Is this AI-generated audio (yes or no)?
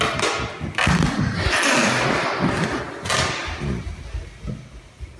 no